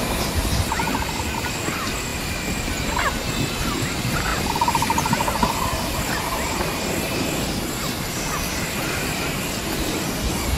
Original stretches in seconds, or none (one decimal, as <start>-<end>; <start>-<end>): 2.1-3.1